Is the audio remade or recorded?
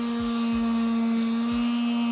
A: recorded